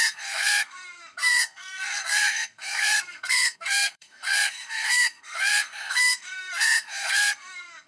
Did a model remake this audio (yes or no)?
yes